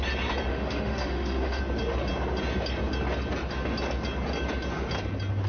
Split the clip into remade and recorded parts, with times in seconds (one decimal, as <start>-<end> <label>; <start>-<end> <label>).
0.0-0.5 recorded; 0.5-1.6 remade; 1.6-5.5 recorded